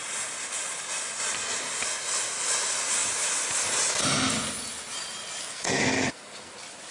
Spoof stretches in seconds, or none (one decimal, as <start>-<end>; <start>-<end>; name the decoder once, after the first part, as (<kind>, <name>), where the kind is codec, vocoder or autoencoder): 5.4-6.5 (codec, SNAC)